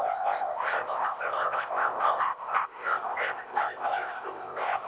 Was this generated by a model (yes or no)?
yes